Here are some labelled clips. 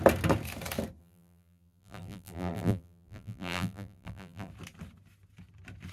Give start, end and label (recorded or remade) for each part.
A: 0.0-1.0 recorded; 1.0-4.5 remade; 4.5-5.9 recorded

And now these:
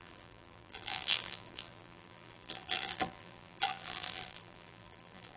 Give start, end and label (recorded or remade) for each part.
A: 0.0-5.4 remade